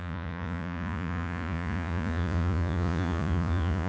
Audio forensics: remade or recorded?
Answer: remade